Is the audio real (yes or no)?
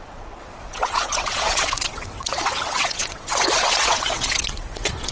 no